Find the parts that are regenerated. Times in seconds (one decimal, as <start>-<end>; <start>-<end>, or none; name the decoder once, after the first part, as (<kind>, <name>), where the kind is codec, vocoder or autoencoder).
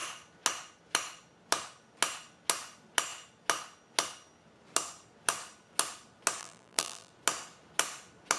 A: 6.4-7.1 (vocoder, BigVGAN v2)